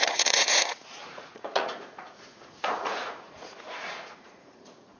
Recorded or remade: remade